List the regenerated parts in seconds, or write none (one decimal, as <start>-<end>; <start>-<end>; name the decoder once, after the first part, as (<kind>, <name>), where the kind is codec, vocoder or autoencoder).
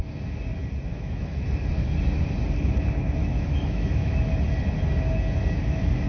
0.9-1.4 (autoencoder, DAC-VAE); 3.2-4.3